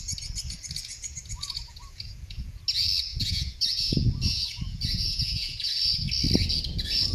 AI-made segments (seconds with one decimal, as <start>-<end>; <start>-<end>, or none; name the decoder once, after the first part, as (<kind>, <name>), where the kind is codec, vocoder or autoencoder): 0.9-2.6 (vocoder, Vocos); 3.1-5.7